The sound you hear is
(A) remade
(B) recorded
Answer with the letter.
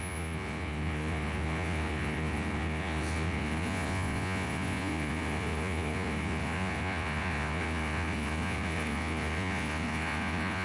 A